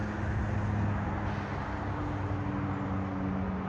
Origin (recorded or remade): recorded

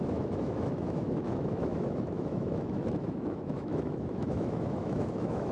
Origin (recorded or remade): remade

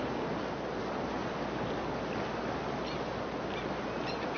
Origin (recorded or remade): recorded